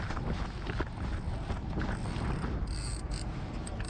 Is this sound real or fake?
real